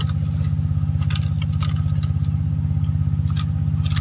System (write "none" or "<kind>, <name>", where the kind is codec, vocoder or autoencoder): none